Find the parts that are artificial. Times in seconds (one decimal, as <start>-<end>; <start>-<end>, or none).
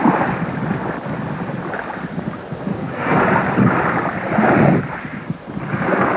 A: 2.7-3.2